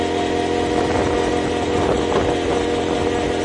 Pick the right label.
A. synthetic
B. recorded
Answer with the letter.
B